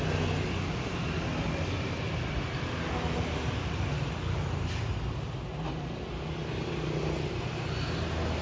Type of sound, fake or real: real